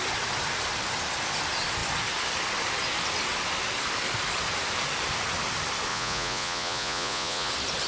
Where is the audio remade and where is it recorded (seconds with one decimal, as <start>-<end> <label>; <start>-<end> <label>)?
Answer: 0.0-5.9 recorded; 5.9-7.5 remade; 7.5-7.9 recorded